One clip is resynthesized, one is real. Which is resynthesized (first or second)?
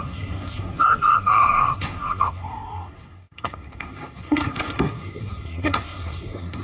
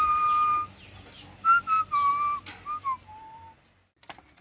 first